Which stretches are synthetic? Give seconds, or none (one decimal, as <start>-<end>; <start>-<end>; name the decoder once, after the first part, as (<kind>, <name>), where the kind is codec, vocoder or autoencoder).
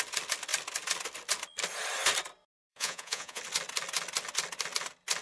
2.7-3.4 (vocoder, Vocos)